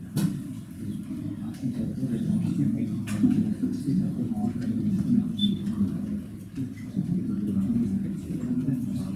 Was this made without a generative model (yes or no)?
yes